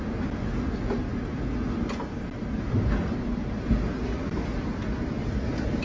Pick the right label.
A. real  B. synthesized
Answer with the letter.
A